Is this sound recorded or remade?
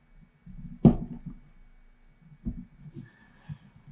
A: recorded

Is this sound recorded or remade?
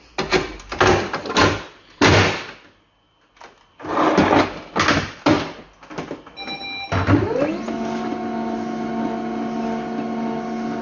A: recorded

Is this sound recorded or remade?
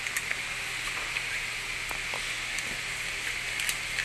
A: recorded